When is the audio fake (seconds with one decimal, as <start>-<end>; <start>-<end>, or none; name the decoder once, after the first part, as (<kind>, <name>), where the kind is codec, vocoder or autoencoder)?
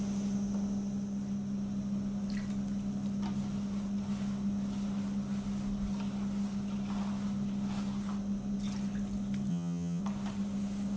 9.5-10.0 (vocoder, HiFi-GAN)